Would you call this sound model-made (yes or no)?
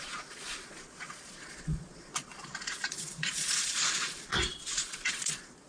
yes